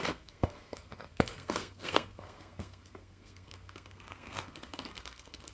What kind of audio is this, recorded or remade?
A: remade